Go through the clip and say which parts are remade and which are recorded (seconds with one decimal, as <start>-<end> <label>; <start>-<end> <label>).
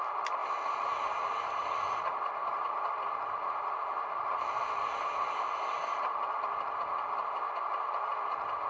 0.0-2.4 recorded; 2.4-4.4 remade; 4.4-8.7 recorded